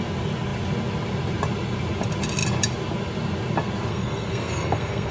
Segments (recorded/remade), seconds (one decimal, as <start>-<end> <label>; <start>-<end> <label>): 0.0-3.9 recorded; 3.9-5.1 remade